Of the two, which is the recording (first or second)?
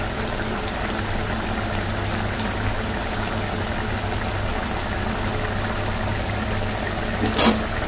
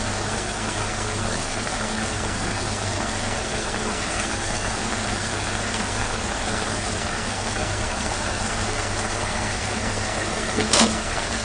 first